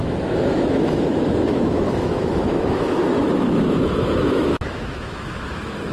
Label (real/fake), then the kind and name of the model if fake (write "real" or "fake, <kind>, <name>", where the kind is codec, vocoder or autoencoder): fake, autoencoder, DAC-VAE